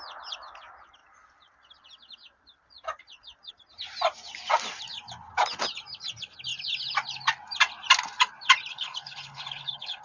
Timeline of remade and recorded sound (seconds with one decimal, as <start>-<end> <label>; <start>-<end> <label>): 0.0-8.7 recorded; 8.7-10.0 remade